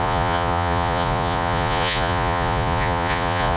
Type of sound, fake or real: fake